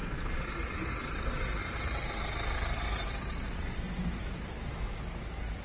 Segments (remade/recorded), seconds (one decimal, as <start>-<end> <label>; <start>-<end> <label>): 0.0-0.6 remade; 0.6-1.6 recorded; 1.6-5.0 remade; 5.0-5.6 recorded